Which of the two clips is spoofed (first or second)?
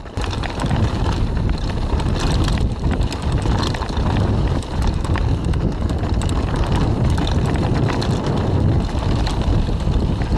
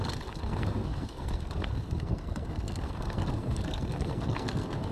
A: second